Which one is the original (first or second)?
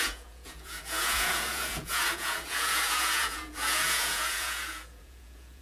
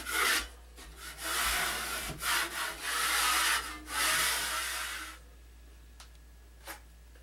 second